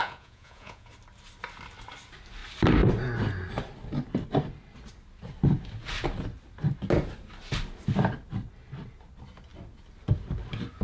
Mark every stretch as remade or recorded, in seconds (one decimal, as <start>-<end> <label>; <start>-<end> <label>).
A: 0.0-0.9 remade; 0.9-10.8 recorded